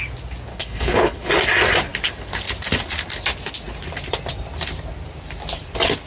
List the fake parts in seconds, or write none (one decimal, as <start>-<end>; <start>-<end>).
0.5-1.3